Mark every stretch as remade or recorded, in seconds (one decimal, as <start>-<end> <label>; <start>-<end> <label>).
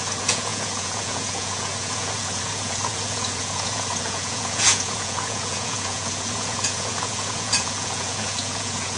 0.0-9.0 remade